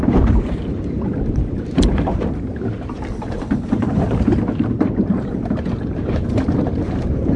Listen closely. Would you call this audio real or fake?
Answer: fake